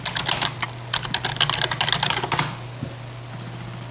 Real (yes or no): yes